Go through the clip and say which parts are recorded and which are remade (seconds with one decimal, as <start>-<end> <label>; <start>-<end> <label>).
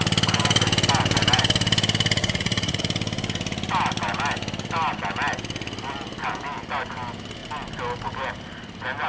0.0-2.2 recorded; 2.2-2.8 remade; 2.8-9.1 recorded